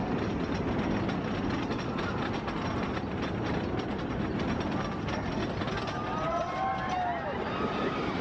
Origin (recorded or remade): recorded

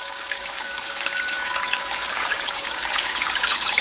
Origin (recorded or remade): remade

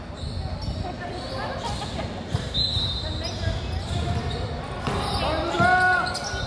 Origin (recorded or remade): recorded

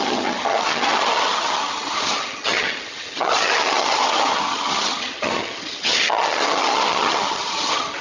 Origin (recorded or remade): remade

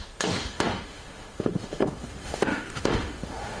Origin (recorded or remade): remade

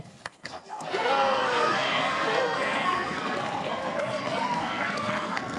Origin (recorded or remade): remade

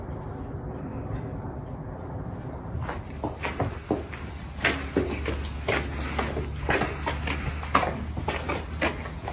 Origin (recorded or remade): recorded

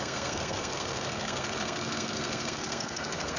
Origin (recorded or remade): remade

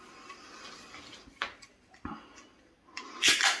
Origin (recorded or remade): recorded